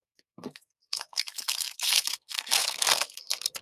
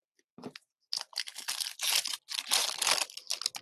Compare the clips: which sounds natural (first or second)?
second